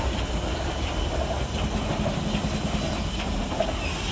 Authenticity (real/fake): real